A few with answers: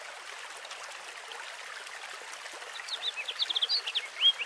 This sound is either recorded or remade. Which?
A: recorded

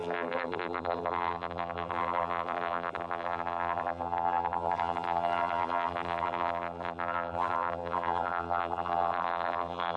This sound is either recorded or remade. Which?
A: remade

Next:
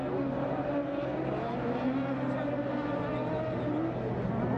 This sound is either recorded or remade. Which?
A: recorded